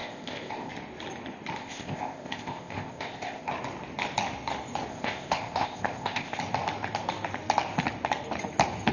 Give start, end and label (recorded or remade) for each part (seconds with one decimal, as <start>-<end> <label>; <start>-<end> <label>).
0.0-0.7 remade; 0.7-1.6 recorded; 1.6-3.5 remade; 3.5-4.9 recorded; 4.9-6.4 remade; 6.4-8.9 recorded